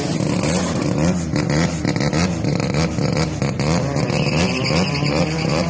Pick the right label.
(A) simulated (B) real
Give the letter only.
B